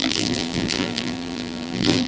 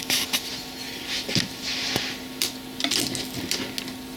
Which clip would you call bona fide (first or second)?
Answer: second